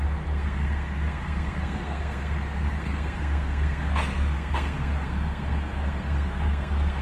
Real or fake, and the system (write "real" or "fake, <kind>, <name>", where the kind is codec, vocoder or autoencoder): fake, codec, SNAC